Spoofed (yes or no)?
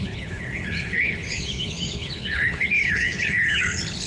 yes